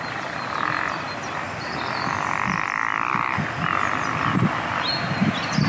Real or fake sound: real